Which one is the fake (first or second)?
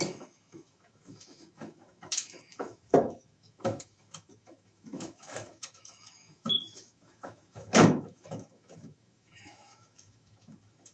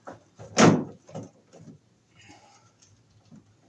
first